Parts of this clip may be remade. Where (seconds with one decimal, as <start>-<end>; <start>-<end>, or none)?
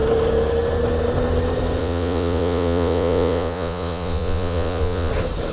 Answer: 1.8-5.1